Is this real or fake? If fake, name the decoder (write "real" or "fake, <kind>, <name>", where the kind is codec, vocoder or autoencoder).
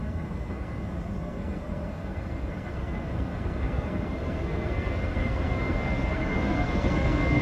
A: fake, codec, SNAC